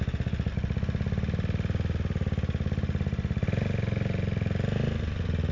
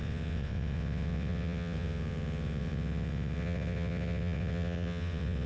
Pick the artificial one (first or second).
second